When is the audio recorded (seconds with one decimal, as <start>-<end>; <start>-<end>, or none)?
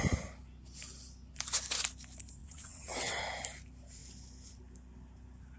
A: 0.0-2.4; 3.2-5.6